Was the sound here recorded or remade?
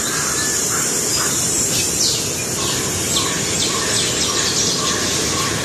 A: recorded